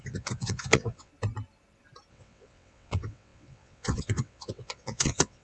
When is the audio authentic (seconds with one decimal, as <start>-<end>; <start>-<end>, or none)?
1.1-2.1